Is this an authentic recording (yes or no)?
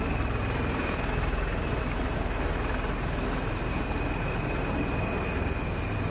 yes